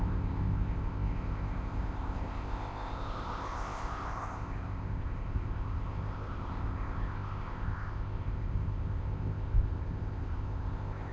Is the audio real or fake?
fake